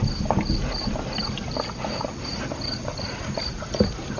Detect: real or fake real